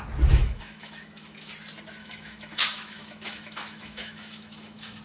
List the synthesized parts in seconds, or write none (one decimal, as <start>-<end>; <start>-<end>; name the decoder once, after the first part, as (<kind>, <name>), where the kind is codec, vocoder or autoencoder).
0.4-1.5 (autoencoder, DAC-VAE); 2.0-5.0